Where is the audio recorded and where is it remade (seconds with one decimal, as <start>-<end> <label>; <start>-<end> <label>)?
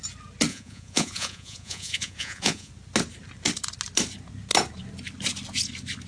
0.0-0.5 recorded; 0.5-2.7 remade; 2.7-6.1 recorded